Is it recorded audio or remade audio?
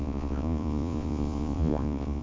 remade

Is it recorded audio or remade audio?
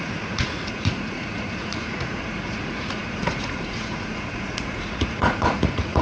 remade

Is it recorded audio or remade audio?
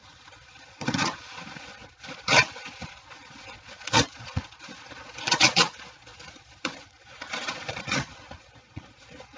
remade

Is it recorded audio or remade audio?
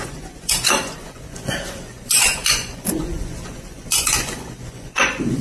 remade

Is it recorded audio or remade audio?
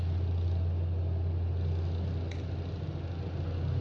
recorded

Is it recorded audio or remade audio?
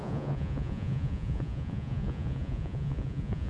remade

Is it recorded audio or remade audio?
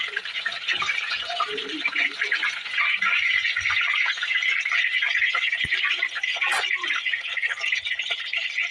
remade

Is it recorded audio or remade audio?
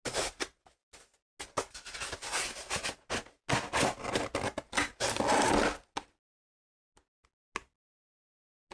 recorded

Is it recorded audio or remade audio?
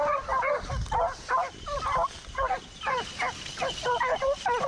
recorded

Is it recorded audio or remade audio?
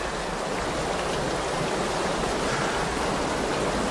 recorded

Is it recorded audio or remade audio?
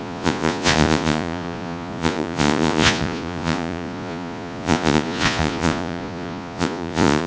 remade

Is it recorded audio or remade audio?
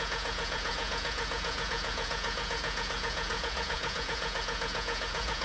remade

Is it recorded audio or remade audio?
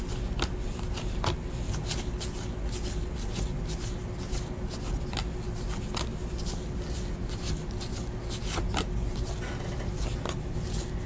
recorded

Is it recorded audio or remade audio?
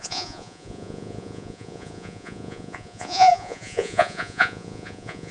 remade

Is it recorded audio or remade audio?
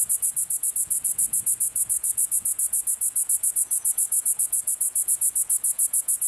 remade